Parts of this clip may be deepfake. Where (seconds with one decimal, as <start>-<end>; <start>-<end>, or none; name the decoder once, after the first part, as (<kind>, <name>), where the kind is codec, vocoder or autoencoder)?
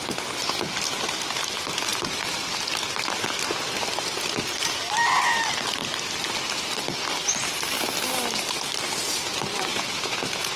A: 9.7-10.6 (vocoder, Vocos)